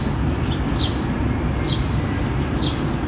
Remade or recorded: recorded